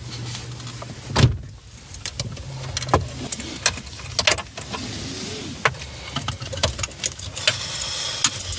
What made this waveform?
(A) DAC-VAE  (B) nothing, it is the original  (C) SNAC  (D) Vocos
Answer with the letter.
B